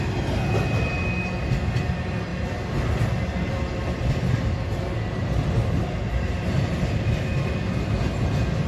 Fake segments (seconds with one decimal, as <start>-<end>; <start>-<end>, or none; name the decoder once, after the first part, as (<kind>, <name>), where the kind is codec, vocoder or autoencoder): none